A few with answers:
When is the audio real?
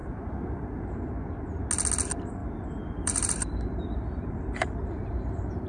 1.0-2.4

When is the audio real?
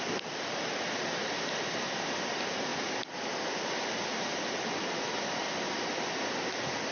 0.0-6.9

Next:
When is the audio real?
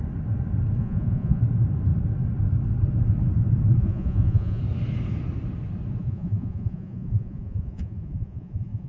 0.0-0.8; 1.4-3.8; 4.6-6.0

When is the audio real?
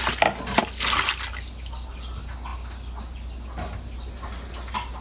0.0-5.0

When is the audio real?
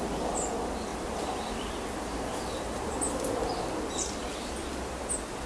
0.0-5.5